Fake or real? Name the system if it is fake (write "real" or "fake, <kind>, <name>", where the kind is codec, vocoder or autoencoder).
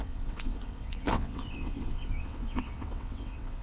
fake, vocoder, WaveNeXt